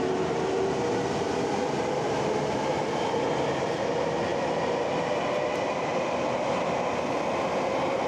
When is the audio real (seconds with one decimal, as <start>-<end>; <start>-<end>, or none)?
0.0-8.1